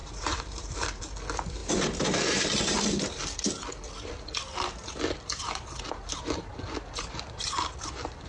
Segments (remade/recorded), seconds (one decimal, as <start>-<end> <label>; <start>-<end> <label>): 0.0-1.0 remade; 1.0-8.3 recorded